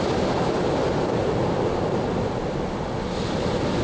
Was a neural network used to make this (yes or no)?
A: no